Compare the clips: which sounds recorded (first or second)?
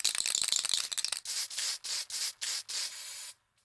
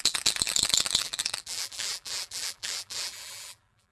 first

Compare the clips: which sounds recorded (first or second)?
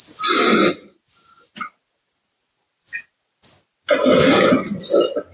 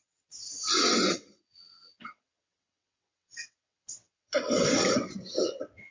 first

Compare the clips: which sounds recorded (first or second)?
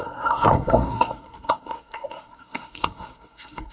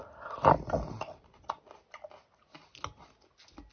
second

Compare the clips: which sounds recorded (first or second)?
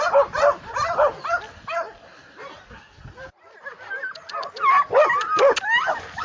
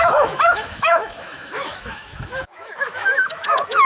first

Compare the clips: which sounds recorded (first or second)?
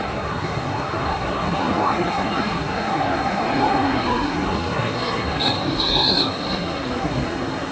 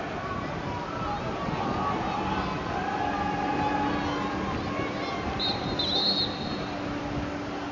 second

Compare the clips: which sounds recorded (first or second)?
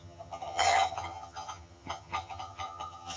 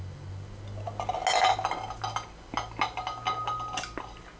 second